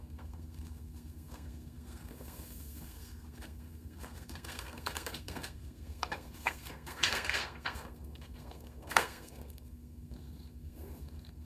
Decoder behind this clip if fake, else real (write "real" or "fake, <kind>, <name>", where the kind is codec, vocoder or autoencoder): fake, codec, SNAC